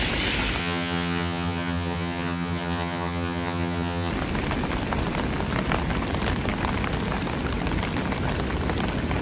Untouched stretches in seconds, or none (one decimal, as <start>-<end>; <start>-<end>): 0.0-0.6; 4.1-9.2